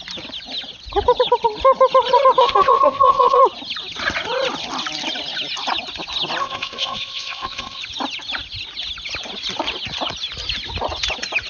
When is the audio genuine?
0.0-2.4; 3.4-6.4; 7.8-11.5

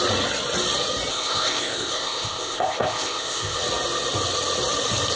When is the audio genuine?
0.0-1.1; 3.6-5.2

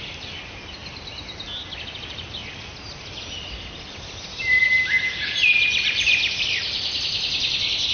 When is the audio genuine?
0.0-7.9